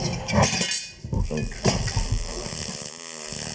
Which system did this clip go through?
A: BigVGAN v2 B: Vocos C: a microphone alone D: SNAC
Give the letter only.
C